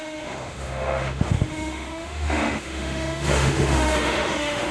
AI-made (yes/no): yes